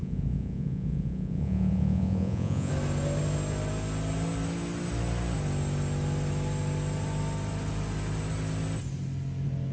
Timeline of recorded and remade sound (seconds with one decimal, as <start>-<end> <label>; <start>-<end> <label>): 0.0-2.7 remade; 2.7-9.7 recorded